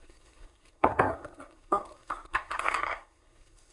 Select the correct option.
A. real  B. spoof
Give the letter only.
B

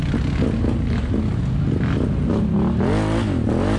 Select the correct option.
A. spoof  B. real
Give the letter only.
B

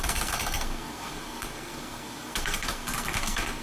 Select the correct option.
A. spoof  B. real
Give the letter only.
A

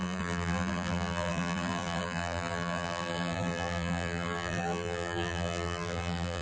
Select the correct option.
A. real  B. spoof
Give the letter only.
B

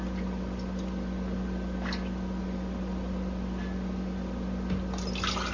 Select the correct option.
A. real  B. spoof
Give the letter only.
A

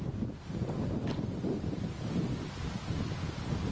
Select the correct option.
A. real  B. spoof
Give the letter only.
A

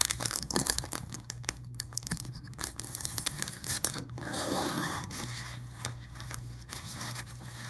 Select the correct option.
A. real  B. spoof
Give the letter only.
B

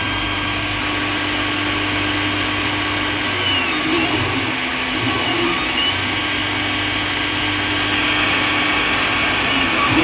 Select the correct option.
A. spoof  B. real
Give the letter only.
B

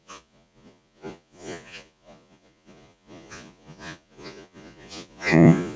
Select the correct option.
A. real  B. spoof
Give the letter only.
B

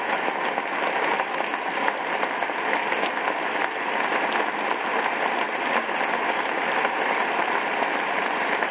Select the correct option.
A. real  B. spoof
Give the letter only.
A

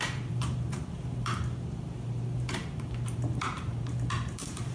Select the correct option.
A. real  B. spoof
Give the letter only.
B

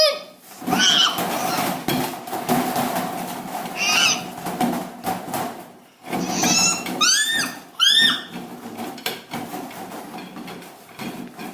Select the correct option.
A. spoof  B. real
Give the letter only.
B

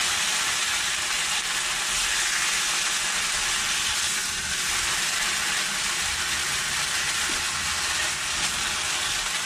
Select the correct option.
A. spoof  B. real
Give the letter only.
B